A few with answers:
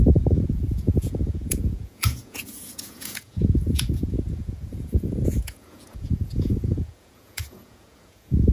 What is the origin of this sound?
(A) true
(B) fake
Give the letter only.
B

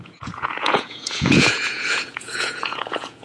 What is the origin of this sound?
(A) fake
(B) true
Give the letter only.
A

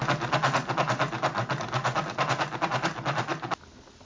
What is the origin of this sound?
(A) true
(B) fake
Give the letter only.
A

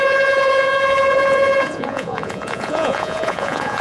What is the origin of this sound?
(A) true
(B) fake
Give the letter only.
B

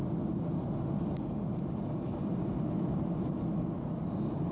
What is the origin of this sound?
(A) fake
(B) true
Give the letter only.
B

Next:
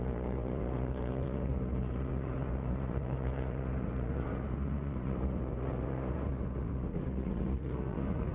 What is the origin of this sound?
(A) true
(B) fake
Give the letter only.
B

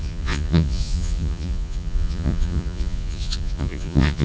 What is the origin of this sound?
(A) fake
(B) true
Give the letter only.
A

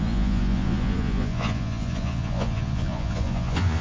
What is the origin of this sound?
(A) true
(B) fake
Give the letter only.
B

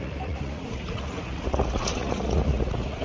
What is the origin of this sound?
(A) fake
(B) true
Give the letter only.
A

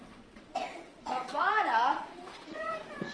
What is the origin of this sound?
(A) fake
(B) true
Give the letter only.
A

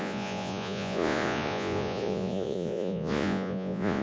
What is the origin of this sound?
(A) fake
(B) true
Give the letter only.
A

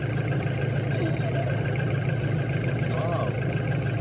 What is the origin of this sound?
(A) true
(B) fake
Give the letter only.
A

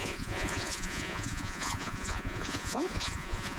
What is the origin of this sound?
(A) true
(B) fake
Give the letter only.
B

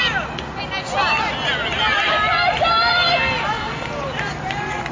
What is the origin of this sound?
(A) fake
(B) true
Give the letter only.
B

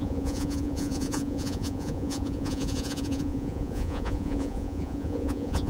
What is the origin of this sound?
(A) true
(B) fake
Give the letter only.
B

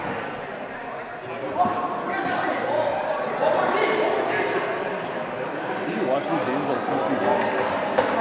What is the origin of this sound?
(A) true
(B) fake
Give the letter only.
A